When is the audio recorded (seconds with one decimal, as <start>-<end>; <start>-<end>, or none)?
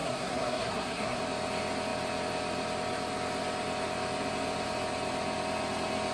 1.2-6.1